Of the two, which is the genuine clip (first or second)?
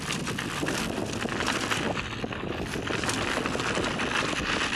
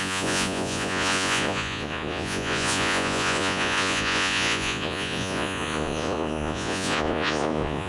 first